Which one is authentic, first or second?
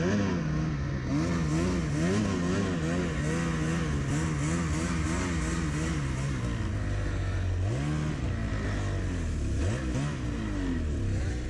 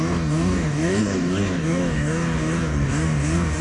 first